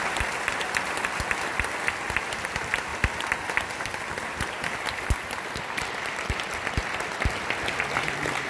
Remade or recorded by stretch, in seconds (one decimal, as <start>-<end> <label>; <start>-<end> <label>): 0.0-8.5 recorded